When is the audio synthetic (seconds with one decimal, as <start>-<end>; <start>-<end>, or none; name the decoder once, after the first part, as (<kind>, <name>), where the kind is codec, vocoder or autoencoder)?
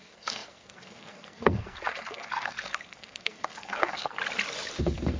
0.0-4.2 (codec, SNAC); 4.8-5.2